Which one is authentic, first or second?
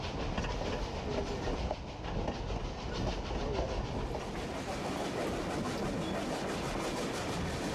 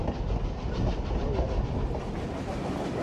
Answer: first